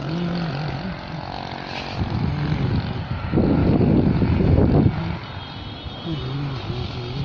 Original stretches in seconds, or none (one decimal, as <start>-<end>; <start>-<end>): 0.0-7.2